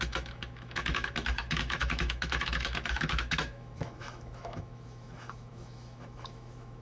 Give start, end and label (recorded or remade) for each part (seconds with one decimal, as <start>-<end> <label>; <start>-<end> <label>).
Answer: 0.0-6.8 remade